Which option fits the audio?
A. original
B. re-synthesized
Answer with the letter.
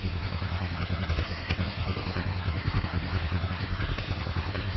B